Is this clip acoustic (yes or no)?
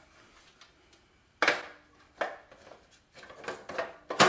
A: yes